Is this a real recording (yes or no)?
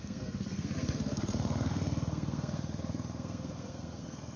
no